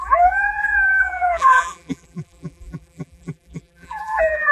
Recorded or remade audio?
remade